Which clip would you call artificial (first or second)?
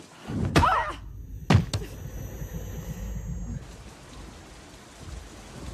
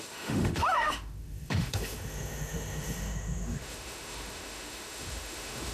second